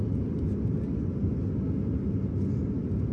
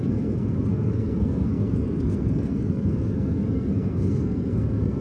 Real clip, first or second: first